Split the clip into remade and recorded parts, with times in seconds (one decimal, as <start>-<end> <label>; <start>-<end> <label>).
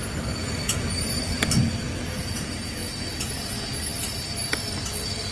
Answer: 0.0-5.3 recorded